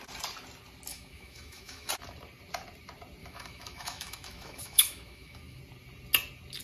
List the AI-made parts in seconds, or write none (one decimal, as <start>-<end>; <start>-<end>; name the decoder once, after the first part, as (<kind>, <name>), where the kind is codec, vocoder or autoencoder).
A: 0.9-1.9 (autoencoder, DAC-VAE); 3.2-5.6